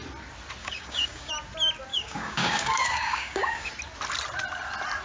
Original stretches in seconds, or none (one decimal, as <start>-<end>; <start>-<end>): 0.0-0.6; 1.3-1.9; 3.7-5.0